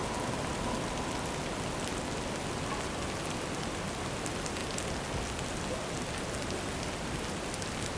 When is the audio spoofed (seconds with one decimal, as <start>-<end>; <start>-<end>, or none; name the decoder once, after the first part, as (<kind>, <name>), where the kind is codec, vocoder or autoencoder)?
none